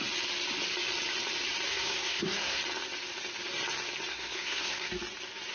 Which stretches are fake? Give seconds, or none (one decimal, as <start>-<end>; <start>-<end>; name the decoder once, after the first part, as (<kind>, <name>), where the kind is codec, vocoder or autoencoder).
1.7-2.6 (codec, SNAC); 4.1-4.9